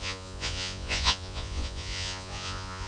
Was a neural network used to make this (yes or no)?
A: yes